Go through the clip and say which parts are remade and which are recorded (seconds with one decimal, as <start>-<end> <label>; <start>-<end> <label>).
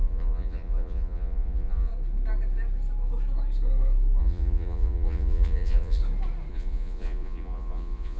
0.0-1.9 remade; 1.9-4.2 recorded; 4.2-6.0 remade; 6.0-6.5 recorded; 6.5-8.2 remade